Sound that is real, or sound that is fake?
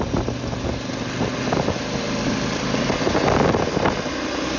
real